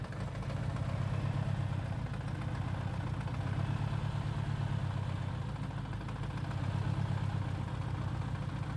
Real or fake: real